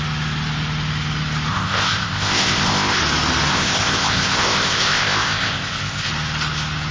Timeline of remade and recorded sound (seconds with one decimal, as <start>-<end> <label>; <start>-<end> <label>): 0.0-1.5 recorded; 1.5-3.0 remade; 3.0-3.5 recorded; 3.5-6.1 remade; 6.1-6.9 recorded